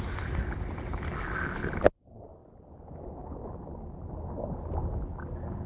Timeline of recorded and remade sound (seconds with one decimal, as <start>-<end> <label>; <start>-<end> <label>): 0.0-5.7 recorded

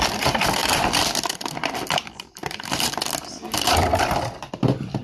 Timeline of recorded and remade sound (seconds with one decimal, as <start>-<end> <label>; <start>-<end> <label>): 0.0-5.0 remade

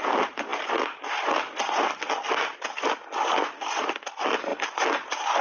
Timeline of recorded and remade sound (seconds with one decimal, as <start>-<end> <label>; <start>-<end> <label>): 0.0-5.4 recorded

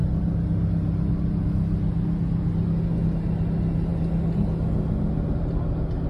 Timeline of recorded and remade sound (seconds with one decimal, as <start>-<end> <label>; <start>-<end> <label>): 0.0-6.1 recorded

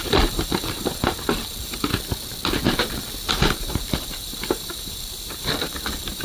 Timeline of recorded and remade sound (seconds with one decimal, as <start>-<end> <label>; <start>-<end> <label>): 0.0-1.9 remade; 1.9-3.3 recorded; 3.3-6.2 remade

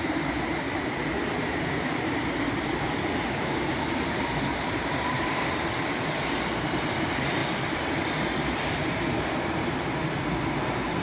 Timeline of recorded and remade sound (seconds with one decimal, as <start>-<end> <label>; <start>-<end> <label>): 0.0-7.4 remade; 7.4-11.0 recorded

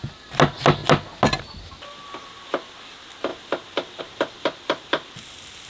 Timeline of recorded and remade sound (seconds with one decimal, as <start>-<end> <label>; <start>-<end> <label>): 0.0-5.7 recorded